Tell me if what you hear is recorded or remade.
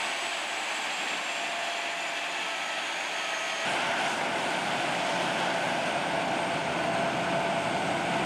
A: recorded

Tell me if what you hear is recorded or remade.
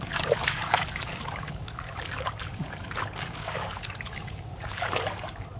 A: remade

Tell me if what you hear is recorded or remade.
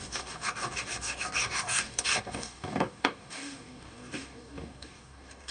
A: remade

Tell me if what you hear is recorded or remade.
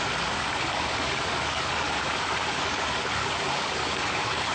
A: remade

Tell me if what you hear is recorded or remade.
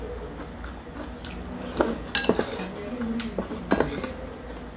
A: recorded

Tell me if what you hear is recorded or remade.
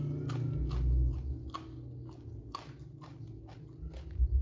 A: recorded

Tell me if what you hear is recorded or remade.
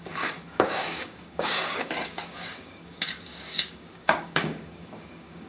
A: remade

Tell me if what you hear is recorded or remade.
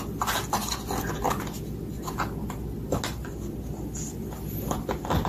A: recorded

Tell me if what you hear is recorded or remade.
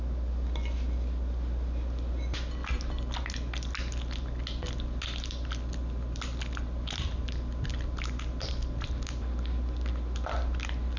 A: recorded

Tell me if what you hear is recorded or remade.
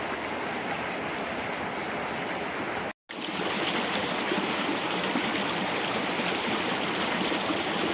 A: recorded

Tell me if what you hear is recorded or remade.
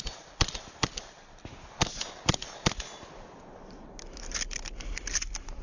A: recorded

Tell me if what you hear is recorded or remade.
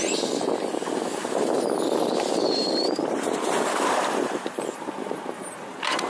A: recorded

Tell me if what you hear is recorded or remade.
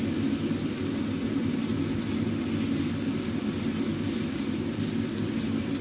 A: recorded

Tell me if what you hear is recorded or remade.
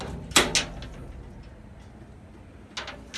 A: recorded